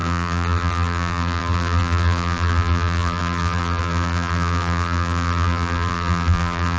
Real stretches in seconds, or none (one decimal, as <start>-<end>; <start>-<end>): none